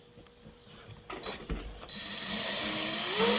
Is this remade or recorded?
recorded